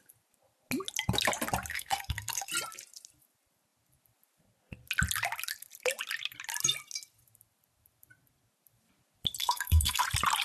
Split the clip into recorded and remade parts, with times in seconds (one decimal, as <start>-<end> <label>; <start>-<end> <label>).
0.0-1.7 recorded; 1.7-2.5 remade; 2.5-9.4 recorded; 9.4-10.0 remade; 10.0-10.4 recorded